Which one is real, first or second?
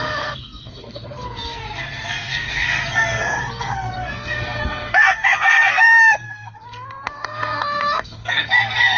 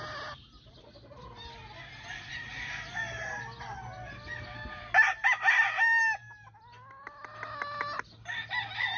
second